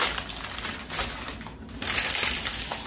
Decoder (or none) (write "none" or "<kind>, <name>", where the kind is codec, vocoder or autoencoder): none